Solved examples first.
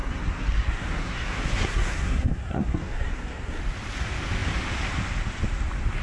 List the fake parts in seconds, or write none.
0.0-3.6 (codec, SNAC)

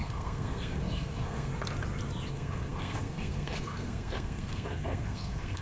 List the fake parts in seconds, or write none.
0.0-1.5 (codec, SNAC); 2.3-5.6

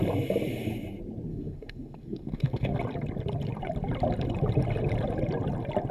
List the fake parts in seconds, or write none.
1.3-2.8 (codec, SNAC)

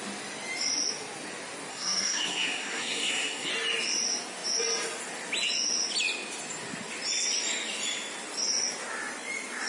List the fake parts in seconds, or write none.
1.7-3.5 (codec, SNAC)